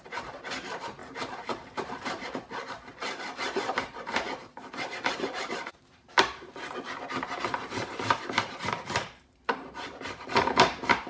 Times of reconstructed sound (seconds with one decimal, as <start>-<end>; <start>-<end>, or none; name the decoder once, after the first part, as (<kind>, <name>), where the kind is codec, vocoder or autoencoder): 0.0-11.1 (vocoder, BigVGAN v2)